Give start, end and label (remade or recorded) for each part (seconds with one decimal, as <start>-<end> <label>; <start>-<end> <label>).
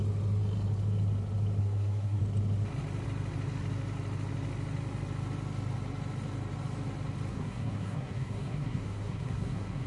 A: 0.0-1.6 recorded; 1.6-2.2 remade; 2.2-7.3 recorded; 7.3-9.9 remade